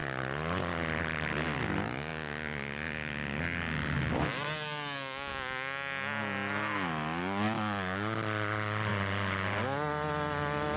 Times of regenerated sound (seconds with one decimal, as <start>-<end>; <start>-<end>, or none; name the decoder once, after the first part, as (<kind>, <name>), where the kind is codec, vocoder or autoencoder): none